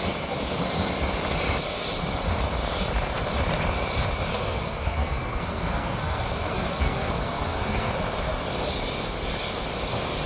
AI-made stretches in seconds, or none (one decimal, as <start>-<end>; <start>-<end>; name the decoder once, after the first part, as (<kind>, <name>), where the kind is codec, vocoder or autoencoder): 4.3-7.9 (codec, SNAC)